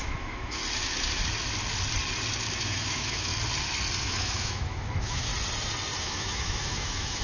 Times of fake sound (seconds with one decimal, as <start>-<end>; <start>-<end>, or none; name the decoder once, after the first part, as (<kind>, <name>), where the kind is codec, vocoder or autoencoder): 0.0-0.6 (autoencoder, DAC-VAE); 2.6-3.3; 4.0-5.3; 6.0-7.2